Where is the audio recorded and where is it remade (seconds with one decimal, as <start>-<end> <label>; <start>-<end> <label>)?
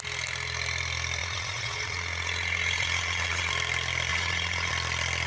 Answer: 0.0-1.2 recorded; 1.2-3.5 remade; 3.5-4.1 recorded; 4.1-4.7 remade; 4.7-5.3 recorded